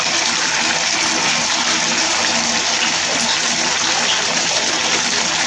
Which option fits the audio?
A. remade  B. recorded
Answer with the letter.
B